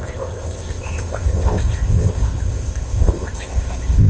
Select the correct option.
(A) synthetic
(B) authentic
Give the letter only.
A